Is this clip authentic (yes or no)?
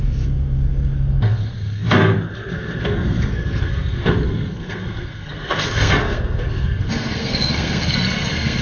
no